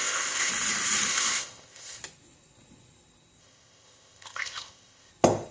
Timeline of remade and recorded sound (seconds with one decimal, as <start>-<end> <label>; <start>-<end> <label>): 0.0-0.5 remade; 0.5-1.1 recorded; 1.1-2.0 remade; 2.0-3.4 recorded; 3.4-5.1 remade; 5.1-5.5 recorded